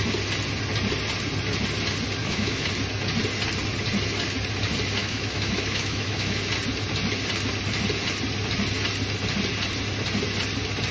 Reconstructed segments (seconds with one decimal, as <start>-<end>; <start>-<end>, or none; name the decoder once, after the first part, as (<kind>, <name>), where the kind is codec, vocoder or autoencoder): 2.2-2.7 (autoencoder, DAC-VAE); 5.0-6.4